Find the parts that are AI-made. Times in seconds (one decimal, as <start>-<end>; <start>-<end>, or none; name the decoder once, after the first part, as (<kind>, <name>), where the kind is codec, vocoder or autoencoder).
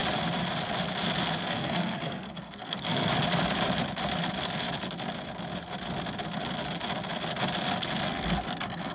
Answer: 1.5-3.1 (codec, SNAC); 8.1-8.9